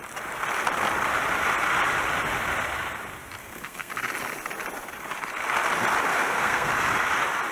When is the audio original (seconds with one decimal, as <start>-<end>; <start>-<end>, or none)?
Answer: 0.0-3.4; 3.9-6.1; 6.7-7.5